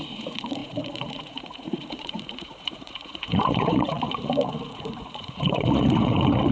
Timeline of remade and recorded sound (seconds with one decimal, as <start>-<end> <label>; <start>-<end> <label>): 0.0-6.5 remade